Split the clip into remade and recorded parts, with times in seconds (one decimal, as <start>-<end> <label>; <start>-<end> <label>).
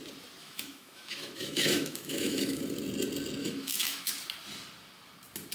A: 0.0-0.4 recorded; 0.4-2.6 remade; 2.6-3.4 recorded; 3.4-4.1 remade; 4.1-5.5 recorded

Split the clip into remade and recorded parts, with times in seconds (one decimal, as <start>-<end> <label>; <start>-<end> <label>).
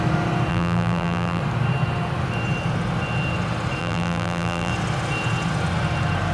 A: 0.0-0.5 recorded; 0.5-1.4 remade; 1.4-3.8 recorded; 3.8-4.7 remade; 4.7-6.3 recorded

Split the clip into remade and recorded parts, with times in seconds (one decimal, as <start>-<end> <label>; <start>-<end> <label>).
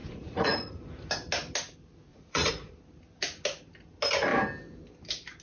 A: 0.0-0.8 remade; 0.8-2.1 recorded; 2.1-2.7 remade; 2.7-5.4 recorded